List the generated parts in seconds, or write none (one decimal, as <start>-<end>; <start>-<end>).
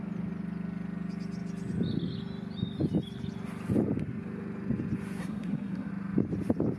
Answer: 5.2-5.9